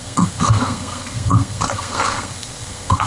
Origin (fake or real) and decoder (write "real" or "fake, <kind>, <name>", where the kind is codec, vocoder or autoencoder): fake, codec, SNAC